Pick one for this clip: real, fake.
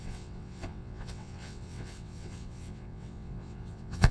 fake